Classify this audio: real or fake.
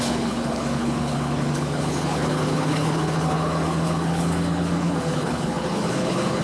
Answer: fake